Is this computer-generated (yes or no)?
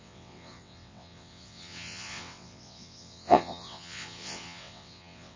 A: yes